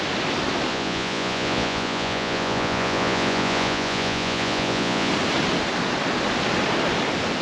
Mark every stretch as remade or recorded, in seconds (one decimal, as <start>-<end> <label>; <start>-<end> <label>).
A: 0.0-0.7 recorded; 0.7-5.1 remade; 5.1-7.4 recorded